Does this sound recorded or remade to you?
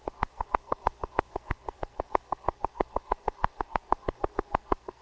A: remade